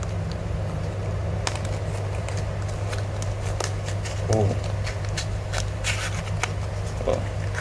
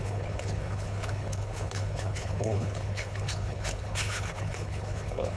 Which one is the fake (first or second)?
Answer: second